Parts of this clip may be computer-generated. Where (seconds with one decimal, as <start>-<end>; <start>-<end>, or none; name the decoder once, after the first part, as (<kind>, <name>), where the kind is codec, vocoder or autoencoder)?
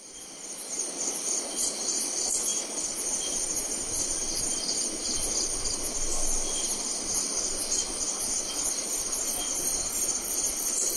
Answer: none